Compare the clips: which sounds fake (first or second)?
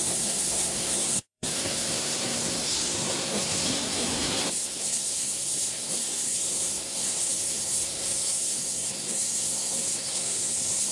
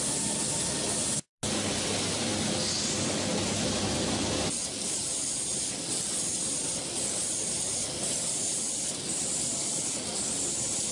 first